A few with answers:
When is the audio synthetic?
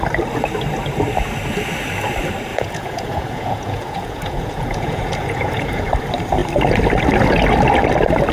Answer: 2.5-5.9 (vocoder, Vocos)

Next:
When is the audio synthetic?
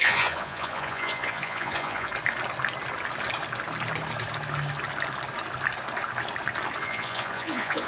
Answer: 0.0-2.1 (vocoder, Vocos); 6.8-7.9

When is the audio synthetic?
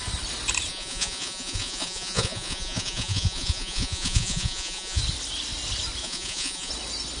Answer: 0.7-5.0 (vocoder, Vocos); 6.0-6.7